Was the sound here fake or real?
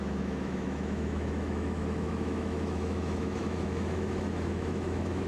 fake